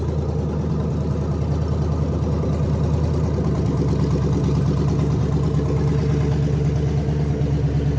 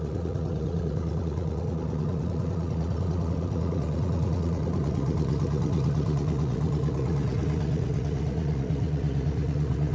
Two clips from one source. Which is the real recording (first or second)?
first